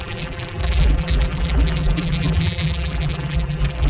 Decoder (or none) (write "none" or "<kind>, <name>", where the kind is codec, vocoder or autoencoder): vocoder, BigVGAN v2